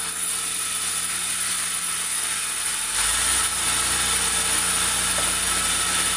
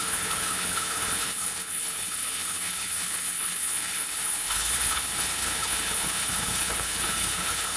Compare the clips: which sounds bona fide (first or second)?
first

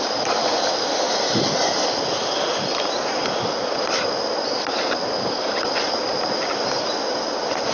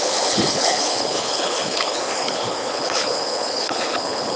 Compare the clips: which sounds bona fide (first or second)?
first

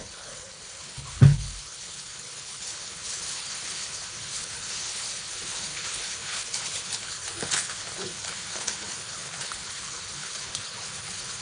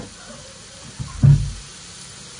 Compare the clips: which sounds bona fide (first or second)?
second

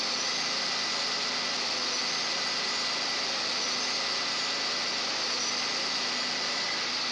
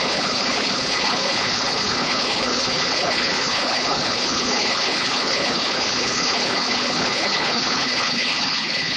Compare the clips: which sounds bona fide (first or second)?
first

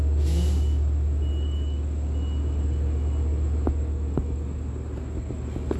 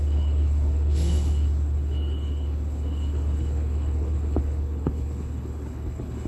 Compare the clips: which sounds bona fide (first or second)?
first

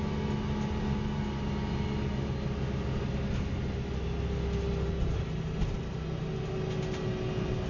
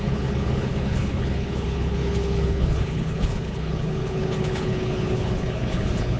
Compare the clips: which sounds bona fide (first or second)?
first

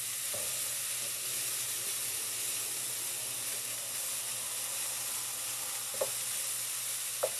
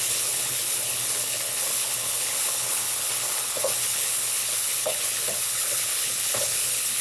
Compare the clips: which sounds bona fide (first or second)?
first